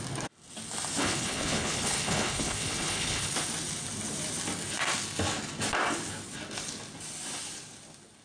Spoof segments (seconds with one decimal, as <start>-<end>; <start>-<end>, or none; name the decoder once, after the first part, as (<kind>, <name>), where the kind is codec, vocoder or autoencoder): 1.0-3.3 (codec, HILCodec)